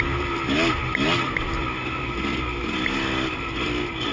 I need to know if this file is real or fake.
real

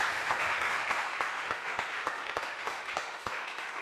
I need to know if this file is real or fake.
fake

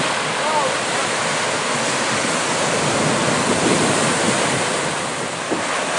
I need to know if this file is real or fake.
real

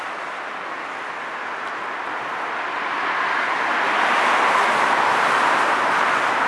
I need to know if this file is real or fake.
real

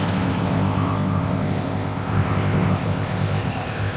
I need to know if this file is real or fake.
fake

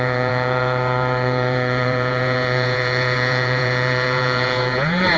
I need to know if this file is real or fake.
fake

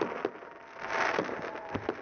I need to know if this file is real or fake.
real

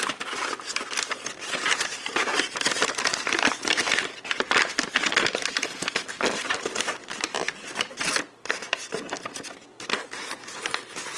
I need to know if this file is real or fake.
real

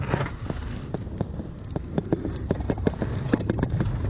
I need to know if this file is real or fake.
real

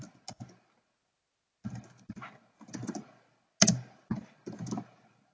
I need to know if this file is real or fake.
real